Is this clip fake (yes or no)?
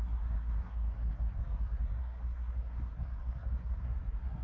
yes